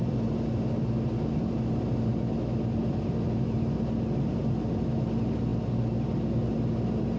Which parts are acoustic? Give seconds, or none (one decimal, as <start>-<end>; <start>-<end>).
0.0-7.2